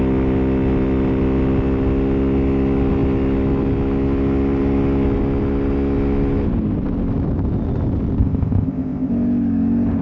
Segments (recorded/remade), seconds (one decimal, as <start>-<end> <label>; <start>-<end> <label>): 0.0-8.2 recorded; 8.2-9.1 remade; 9.1-10.0 recorded